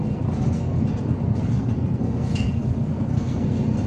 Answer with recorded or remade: remade